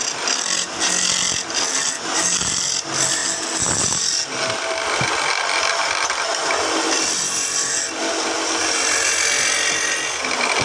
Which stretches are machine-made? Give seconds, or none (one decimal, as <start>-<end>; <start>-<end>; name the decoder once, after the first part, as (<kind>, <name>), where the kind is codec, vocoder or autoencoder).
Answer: none